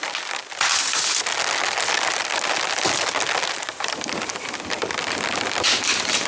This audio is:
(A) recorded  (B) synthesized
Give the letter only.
A